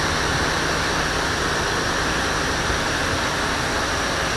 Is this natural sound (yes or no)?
yes